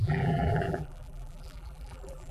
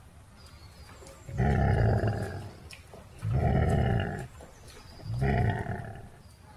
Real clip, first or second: second